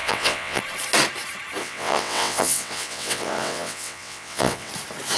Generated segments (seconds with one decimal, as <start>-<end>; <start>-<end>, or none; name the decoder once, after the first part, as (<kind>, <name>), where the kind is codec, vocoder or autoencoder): 0.0-0.6 (vocoder, WaveNeXt); 1.6-4.7